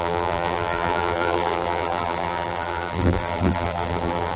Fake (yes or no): yes